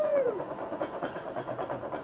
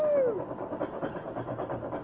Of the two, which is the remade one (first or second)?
first